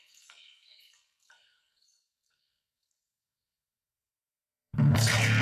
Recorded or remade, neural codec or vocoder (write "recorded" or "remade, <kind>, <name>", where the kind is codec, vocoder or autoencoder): remade, codec, SNAC